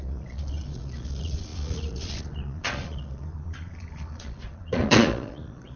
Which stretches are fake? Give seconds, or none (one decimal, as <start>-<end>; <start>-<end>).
0.0-5.8